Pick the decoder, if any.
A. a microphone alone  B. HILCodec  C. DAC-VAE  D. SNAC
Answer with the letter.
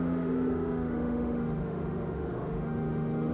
C